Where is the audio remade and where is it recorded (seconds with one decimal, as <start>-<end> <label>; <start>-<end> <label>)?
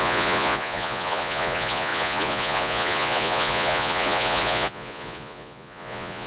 0.0-6.3 remade